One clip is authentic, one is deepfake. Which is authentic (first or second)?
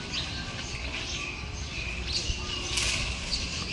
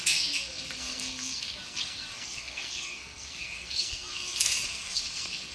first